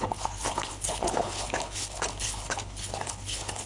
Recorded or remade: remade